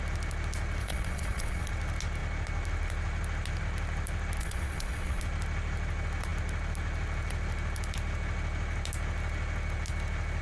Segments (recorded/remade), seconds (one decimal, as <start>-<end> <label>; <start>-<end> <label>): 0.0-0.8 recorded; 0.8-1.7 remade; 1.7-4.4 recorded; 4.4-5.2 remade; 5.2-10.4 recorded